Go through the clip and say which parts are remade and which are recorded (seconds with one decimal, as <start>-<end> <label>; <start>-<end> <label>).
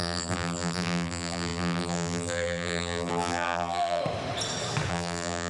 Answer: 0.0-4.0 remade; 4.0-4.9 recorded; 4.9-5.5 remade